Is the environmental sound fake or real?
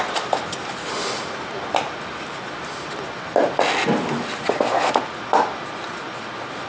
real